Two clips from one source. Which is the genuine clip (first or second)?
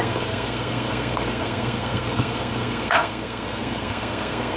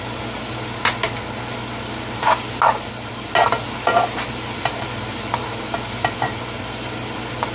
second